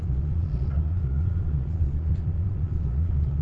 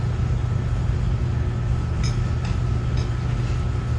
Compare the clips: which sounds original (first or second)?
second